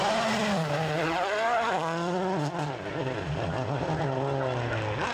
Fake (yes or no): no